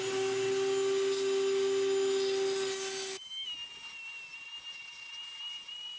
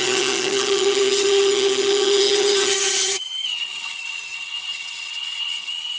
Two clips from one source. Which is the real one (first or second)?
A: first